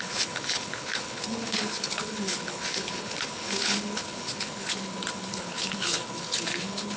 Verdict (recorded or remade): remade